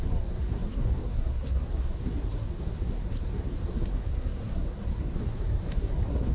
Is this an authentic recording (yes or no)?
no